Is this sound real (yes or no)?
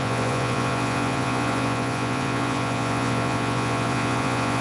no